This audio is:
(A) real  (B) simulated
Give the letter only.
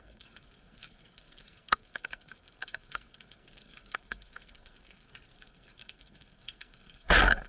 B